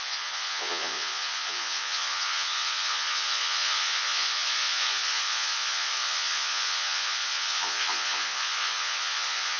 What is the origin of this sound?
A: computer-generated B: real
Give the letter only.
A